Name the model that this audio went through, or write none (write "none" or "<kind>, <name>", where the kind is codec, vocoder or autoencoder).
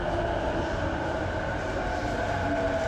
none